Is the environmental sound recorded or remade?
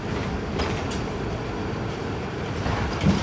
remade